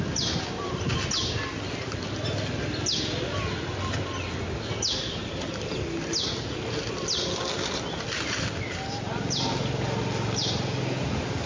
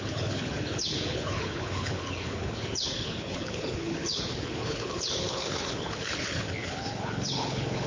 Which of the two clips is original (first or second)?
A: first